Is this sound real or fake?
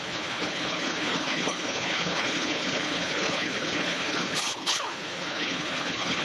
fake